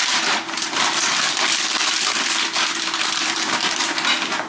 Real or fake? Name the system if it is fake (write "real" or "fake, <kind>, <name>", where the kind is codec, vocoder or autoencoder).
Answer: fake, vocoder, BigVGAN v2